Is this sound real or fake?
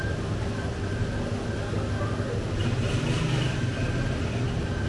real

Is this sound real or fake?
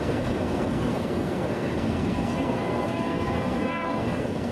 fake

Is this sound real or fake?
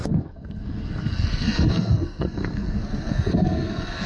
fake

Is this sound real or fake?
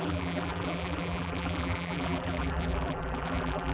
fake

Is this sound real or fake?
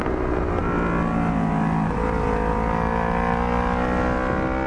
real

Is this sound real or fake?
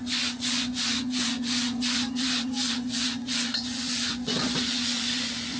fake